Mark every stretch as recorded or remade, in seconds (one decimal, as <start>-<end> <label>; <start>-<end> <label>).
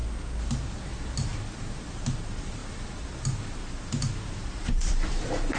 0.0-1.9 recorded; 1.9-2.6 remade; 2.6-3.6 recorded; 3.6-5.6 remade